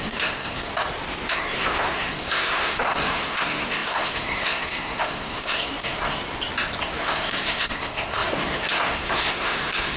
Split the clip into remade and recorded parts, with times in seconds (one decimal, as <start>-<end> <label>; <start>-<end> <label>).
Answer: 0.0-0.7 remade; 0.7-1.3 recorded; 1.3-6.2 remade; 6.2-6.9 recorded; 6.9-10.0 remade